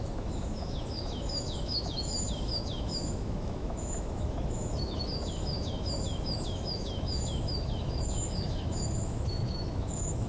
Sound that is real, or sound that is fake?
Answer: fake